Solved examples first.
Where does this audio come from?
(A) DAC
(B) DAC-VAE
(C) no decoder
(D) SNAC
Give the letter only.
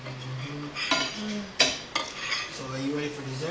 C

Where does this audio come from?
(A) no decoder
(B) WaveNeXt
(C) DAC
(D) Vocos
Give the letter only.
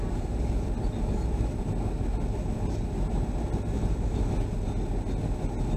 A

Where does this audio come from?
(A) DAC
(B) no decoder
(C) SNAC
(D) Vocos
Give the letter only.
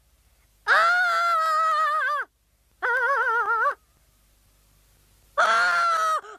B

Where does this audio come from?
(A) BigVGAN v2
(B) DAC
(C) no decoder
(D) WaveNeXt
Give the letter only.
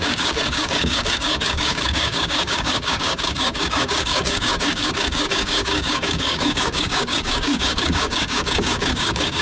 B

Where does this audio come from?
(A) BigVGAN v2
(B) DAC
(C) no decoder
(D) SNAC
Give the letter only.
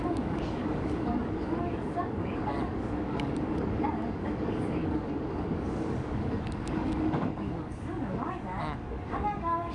B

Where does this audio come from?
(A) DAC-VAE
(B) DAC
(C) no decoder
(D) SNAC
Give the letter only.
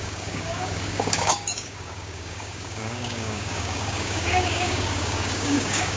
B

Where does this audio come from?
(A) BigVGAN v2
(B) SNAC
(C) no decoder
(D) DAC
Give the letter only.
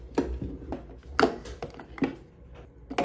C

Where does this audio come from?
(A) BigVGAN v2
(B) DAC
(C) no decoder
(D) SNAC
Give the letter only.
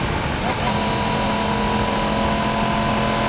C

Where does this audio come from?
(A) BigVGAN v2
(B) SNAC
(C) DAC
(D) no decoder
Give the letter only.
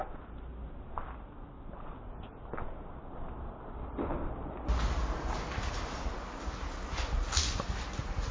D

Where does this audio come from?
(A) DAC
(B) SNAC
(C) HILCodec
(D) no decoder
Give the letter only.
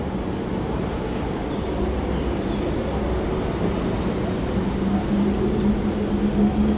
D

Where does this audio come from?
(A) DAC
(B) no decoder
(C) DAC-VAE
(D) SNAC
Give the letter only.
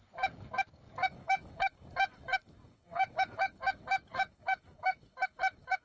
A